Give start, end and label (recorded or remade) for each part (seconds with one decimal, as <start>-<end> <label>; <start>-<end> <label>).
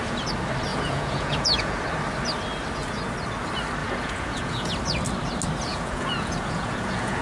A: 0.0-0.7 recorded; 0.7-1.8 remade; 1.8-3.8 recorded; 3.8-4.7 remade; 4.7-5.7 recorded; 5.7-7.2 remade